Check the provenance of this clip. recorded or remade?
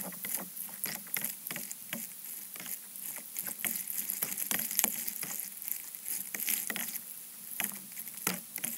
recorded